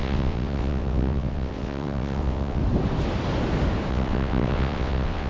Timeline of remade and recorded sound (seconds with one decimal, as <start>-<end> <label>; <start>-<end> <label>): 0.0-2.6 remade; 2.6-3.9 recorded; 3.9-5.3 remade